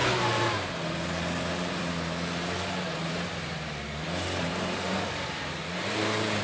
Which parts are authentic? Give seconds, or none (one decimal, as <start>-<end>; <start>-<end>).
none